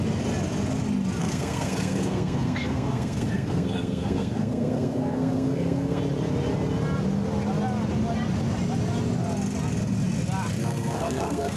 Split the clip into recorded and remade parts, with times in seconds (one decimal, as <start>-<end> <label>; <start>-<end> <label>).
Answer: 0.0-1.2 recorded; 1.2-6.0 remade; 6.0-10.6 recorded; 10.6-11.6 remade